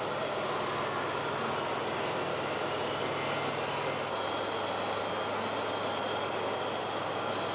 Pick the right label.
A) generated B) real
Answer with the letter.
B